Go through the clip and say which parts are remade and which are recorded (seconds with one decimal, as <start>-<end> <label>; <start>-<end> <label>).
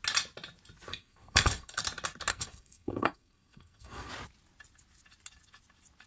0.0-0.9 recorded; 0.9-1.8 remade; 1.8-2.3 recorded; 2.3-4.1 remade; 4.1-6.1 recorded